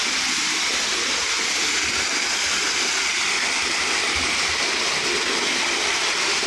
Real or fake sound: real